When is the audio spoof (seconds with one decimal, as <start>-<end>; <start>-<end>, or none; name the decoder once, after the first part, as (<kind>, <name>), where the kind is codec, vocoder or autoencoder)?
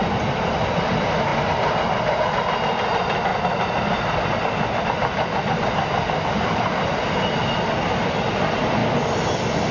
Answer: none